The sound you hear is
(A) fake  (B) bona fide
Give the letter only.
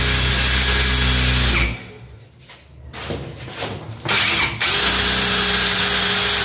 B